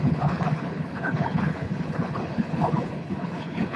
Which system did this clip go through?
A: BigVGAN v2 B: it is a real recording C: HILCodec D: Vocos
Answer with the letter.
C